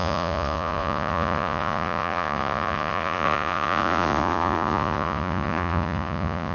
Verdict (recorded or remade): remade